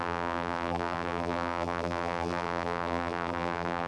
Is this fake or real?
fake